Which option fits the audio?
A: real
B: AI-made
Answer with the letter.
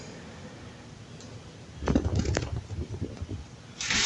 A